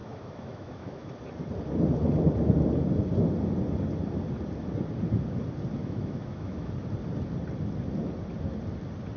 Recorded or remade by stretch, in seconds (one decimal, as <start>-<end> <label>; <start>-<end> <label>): 0.0-1.1 remade; 1.1-5.8 recorded; 5.8-6.7 remade; 6.7-9.2 recorded